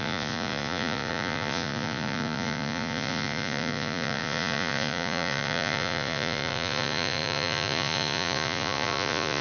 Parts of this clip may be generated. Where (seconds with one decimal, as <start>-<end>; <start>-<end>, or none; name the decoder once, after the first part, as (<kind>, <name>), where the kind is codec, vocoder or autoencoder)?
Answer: 0.0-9.4 (vocoder, Vocos)